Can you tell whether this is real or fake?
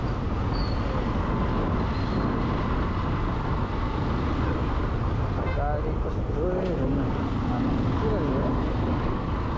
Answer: real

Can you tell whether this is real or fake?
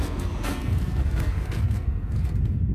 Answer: fake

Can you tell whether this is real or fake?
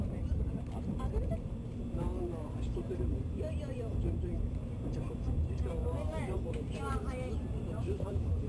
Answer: fake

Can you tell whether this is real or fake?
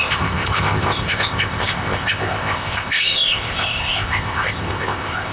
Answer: fake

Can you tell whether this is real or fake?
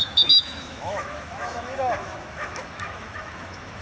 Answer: fake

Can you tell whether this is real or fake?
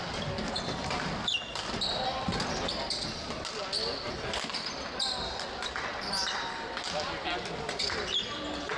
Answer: real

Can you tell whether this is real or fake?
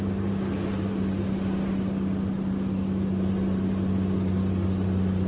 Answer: real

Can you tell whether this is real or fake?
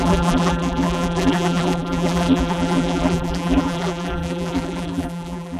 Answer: fake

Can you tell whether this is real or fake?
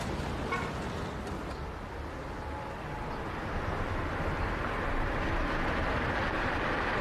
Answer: real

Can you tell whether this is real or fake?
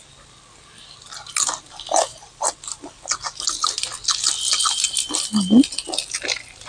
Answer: real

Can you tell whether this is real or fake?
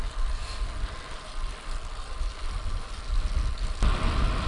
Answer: real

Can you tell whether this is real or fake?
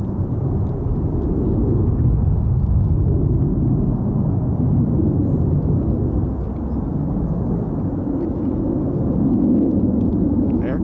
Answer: real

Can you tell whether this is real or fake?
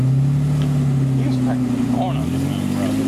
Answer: real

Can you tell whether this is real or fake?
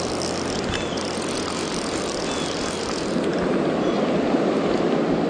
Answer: real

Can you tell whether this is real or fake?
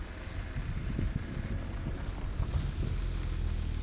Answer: real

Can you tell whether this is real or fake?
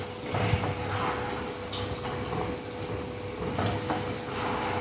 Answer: real